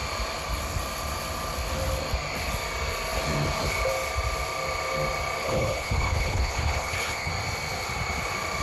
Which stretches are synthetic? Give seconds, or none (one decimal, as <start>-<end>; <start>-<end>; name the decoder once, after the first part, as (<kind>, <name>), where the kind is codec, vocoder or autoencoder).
5.4-7.3 (codec, HILCodec)